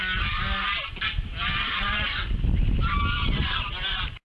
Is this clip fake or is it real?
real